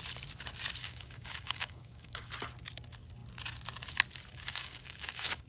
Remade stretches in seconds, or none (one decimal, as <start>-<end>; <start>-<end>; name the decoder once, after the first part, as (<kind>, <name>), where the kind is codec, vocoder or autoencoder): 0.8-2.3 (codec, DAC); 4.3-5.5